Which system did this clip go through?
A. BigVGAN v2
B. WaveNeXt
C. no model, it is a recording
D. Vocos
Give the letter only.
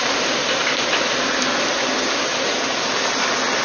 C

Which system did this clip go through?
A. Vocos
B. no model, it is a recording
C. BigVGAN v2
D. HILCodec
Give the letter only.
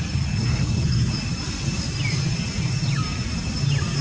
B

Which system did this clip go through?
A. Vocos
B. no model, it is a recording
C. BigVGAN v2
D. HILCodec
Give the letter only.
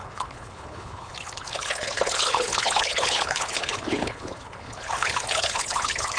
D